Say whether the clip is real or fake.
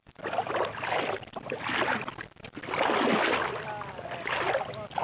real